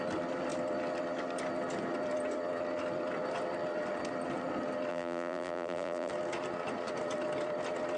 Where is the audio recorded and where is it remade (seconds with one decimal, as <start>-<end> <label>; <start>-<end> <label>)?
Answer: 0.0-4.9 recorded; 4.9-6.1 remade; 6.1-8.0 recorded